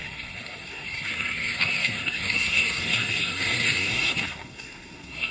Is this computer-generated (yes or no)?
yes